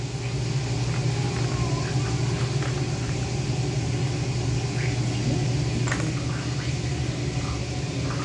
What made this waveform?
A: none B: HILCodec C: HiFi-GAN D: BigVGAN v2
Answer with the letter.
A